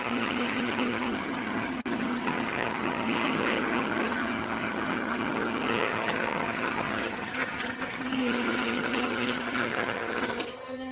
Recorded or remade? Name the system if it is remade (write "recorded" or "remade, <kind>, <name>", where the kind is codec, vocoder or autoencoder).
remade, vocoder, HiFi-GAN